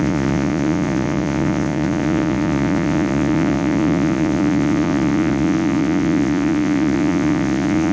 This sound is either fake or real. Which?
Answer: fake